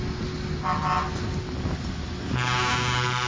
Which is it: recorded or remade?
recorded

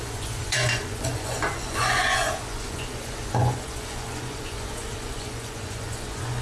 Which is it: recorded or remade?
remade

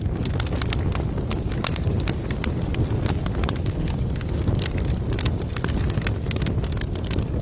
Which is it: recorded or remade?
recorded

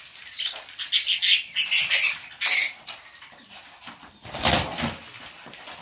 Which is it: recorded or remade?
recorded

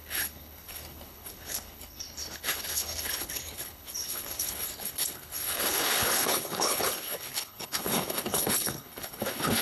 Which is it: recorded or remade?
remade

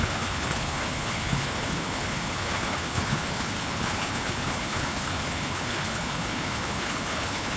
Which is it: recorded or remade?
remade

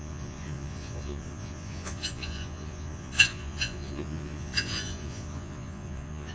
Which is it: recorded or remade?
remade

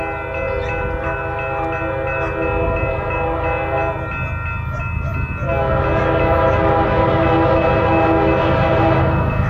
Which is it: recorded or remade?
recorded